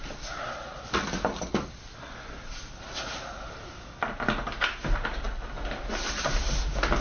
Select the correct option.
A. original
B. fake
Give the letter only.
A